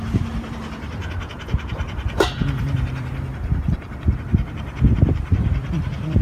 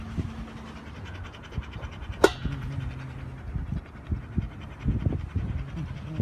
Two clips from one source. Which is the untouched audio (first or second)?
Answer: second